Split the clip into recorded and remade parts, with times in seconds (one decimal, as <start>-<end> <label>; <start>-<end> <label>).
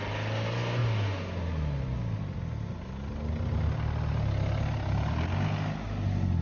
0.0-6.4 recorded